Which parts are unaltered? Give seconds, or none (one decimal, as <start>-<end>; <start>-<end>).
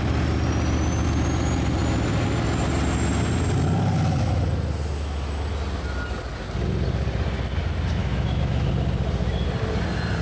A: 0.0-8.0; 8.7-10.2